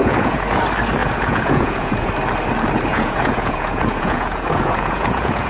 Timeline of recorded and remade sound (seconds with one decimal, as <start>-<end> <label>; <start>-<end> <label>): 0.0-0.6 remade; 0.6-1.0 recorded; 1.0-2.1 remade; 2.1-2.9 recorded; 2.9-5.5 remade

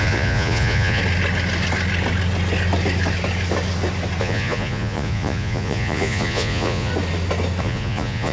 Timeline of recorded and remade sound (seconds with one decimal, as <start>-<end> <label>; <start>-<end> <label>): 0.0-1.0 remade; 1.0-4.2 recorded; 4.2-6.9 remade; 6.9-7.6 recorded; 7.6-8.3 remade